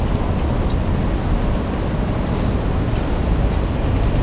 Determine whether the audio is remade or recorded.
recorded